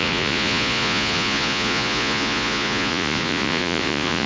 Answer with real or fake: fake